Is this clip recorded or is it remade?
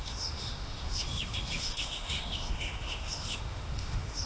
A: remade